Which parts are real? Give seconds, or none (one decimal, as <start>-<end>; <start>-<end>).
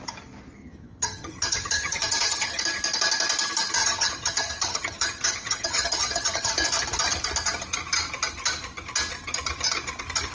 0.0-0.6; 2.6-3.8; 6.5-10.3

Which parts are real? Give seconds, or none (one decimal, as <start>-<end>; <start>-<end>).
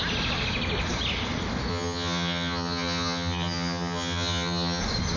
0.0-1.7; 4.8-5.2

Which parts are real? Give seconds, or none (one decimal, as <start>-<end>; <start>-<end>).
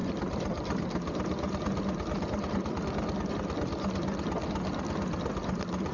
0.0-5.9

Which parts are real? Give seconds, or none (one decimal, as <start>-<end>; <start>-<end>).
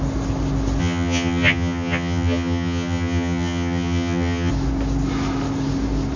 0.0-0.8; 4.5-6.2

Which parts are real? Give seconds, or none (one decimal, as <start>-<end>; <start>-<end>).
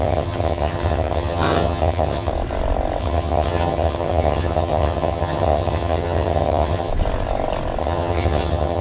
2.3-3.0; 6.9-7.8